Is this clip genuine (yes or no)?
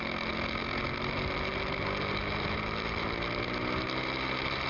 yes